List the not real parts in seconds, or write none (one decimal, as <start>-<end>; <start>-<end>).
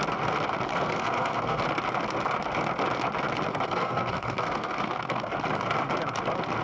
0.7-1.6; 3.5-5.3